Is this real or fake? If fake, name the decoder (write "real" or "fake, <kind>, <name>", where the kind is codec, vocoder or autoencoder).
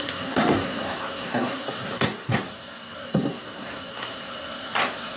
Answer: fake, codec, SNAC